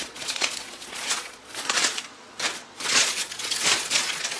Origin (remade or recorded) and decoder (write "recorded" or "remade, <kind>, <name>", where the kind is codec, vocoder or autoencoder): remade, vocoder, Vocos